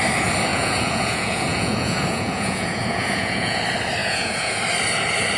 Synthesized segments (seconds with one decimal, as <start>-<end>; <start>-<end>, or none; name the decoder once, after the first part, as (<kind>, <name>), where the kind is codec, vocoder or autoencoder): 0.5-3.6 (vocoder, Vocos); 4.0-4.6